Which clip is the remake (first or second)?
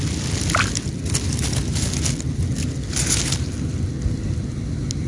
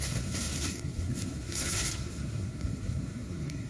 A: second